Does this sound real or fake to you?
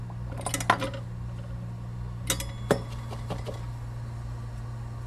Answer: real